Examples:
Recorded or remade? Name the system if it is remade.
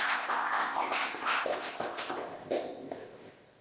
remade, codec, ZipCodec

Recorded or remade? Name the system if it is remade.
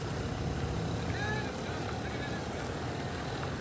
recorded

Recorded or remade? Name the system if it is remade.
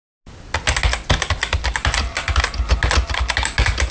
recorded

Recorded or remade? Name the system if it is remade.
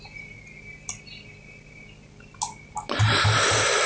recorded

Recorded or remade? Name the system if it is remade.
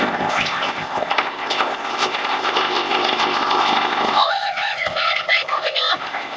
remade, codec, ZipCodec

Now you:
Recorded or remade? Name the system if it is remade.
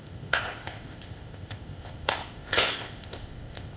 remade, codec, ZipCodec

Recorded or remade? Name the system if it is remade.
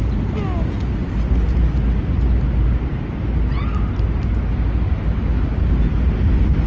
recorded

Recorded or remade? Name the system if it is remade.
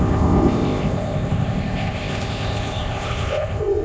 remade, codec, ZipCodec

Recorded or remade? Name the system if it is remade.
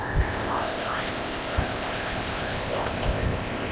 remade, codec, ZipCodec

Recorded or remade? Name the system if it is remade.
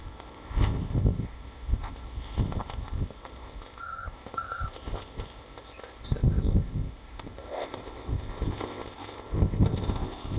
remade, codec, ZipCodec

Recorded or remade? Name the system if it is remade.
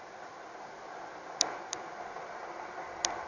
recorded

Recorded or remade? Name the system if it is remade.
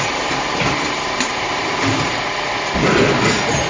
recorded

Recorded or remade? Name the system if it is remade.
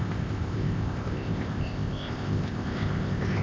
remade, codec, ZipCodec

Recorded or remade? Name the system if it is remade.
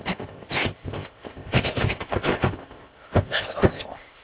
remade, codec, ZipCodec